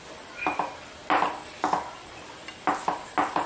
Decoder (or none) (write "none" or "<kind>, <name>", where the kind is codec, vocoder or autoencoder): none